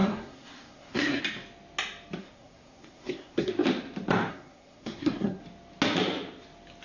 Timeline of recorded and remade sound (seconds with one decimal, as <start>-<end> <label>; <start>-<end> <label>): 0.0-1.2 remade; 1.2-2.2 recorded; 2.2-3.5 remade; 3.5-4.3 recorded; 4.3-5.4 remade; 5.4-6.8 recorded